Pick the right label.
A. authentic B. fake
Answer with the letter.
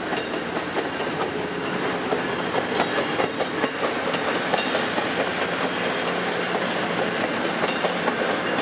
A